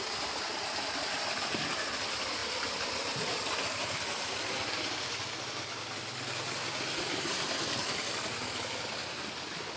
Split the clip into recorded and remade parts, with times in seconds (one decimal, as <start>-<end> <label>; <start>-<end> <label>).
0.0-9.8 recorded